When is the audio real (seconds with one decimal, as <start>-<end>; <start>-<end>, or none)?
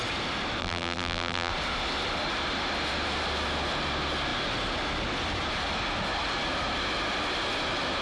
0.0-0.6; 1.5-8.0